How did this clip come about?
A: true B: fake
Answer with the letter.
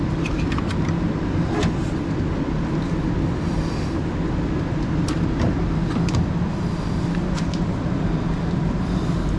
A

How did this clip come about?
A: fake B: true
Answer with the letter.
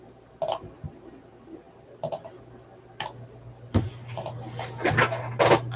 B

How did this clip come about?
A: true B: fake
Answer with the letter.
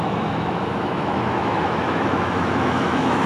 B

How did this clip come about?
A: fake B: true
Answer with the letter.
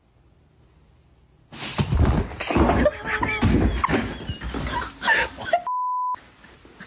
B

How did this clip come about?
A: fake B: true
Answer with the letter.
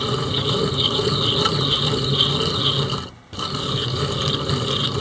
B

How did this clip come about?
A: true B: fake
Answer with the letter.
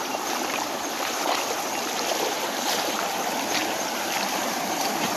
B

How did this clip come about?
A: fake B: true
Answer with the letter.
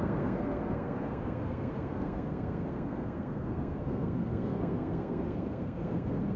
A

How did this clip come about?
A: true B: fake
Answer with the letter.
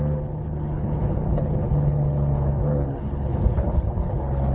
B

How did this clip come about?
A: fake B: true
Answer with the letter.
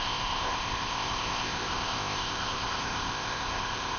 A